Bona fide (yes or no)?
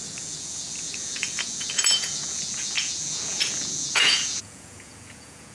no